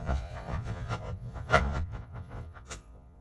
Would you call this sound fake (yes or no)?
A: yes